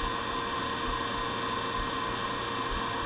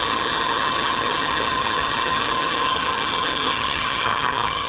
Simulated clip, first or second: second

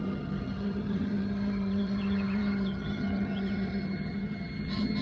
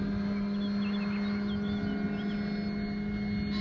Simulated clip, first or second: first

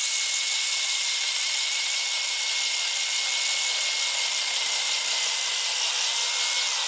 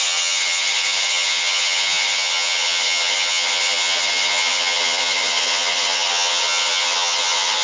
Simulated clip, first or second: second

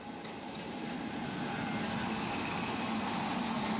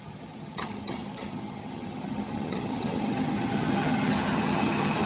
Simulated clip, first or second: second